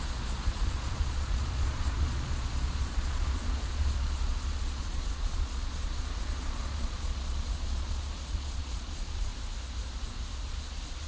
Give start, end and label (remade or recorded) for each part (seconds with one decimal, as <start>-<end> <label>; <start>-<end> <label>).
0.0-9.3 remade; 9.3-10.5 recorded; 10.5-11.1 remade